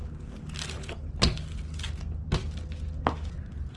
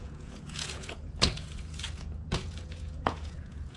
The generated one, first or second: second